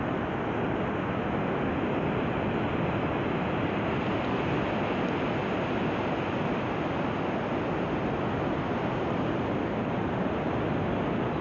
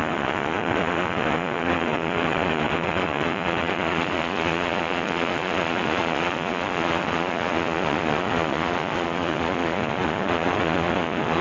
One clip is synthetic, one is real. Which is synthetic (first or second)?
second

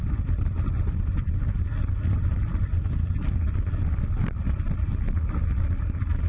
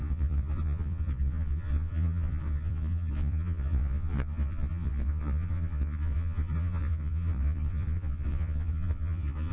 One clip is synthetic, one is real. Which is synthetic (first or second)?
second